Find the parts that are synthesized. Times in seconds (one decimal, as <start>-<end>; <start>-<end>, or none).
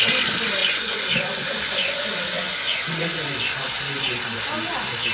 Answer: 0.6-3.7